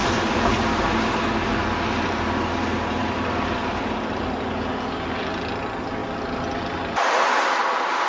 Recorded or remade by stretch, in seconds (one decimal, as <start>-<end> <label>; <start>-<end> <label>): 0.0-0.8 remade; 0.8-3.0 recorded; 3.0-4.5 remade; 4.5-6.0 recorded; 6.0-8.1 remade